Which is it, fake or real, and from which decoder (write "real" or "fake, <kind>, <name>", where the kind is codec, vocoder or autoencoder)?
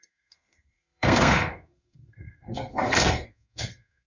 fake, codec, SNAC